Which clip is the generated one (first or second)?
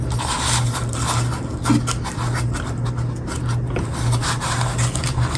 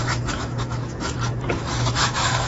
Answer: second